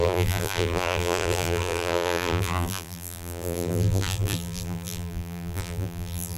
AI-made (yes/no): yes